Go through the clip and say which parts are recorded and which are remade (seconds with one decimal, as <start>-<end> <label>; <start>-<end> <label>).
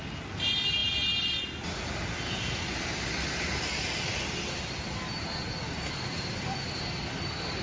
0.0-7.6 recorded